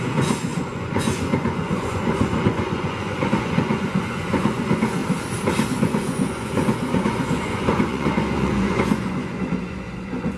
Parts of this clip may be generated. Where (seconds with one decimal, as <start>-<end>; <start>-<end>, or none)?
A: 0.0-5.0; 5.7-10.4